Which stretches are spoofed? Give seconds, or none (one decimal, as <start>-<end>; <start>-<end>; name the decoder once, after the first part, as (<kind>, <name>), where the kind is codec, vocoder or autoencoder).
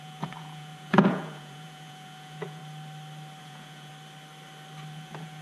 0.0-2.6 (vocoder, Vocos); 3.4-3.9; 4.9-5.4